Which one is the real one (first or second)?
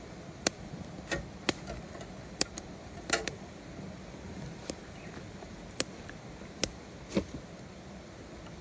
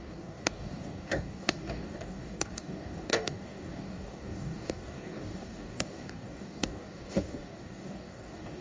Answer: first